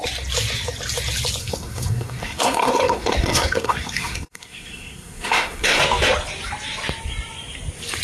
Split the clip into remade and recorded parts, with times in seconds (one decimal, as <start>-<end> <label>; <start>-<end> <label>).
0.0-1.4 recorded; 1.4-5.8 remade; 5.8-8.0 recorded